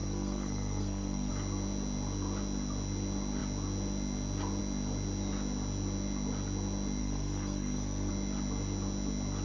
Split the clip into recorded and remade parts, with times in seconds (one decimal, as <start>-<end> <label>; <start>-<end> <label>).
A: 0.0-1.3 remade; 1.3-7.0 recorded; 7.0-8.1 remade; 8.1-9.4 recorded